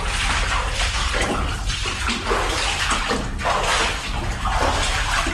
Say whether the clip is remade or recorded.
recorded